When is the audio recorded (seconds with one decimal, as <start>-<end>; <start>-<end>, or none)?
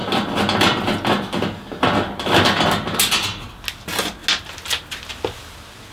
0.0-5.9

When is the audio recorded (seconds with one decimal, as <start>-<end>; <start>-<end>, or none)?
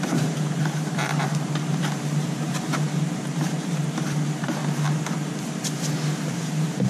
4.6-6.5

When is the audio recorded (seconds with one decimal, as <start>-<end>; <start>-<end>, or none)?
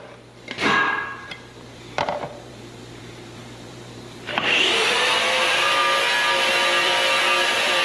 5.8-6.3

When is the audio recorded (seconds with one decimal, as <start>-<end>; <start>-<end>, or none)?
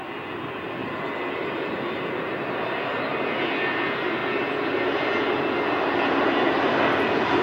0.0-7.4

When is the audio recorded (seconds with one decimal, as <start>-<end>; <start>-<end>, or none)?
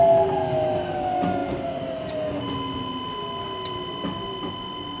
0.0-1.4; 2.5-5.0